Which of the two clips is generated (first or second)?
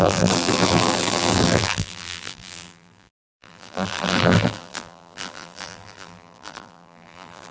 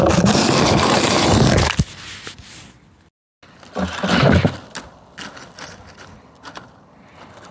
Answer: first